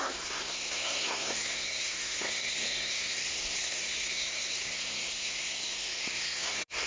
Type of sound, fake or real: fake